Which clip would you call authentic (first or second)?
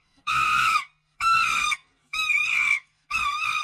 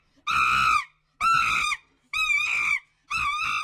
second